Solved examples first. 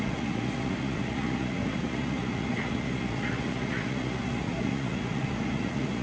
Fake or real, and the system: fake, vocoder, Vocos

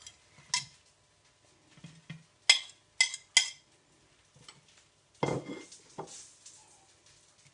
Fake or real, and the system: real